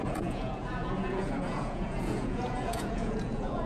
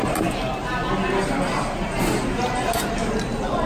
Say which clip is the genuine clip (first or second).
second